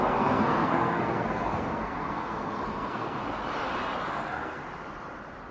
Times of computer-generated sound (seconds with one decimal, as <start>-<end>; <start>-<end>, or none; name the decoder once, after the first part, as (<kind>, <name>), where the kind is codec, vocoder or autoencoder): 0.0-3.2 (codec, SNAC); 4.1-4.6